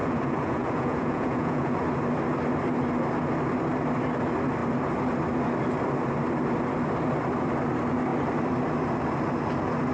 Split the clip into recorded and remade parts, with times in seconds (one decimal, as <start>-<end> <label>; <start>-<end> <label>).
0.0-1.8 remade; 1.8-9.9 recorded